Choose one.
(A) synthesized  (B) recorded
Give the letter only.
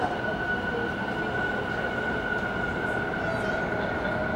B